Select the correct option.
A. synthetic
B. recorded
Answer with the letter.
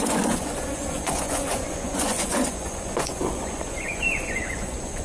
A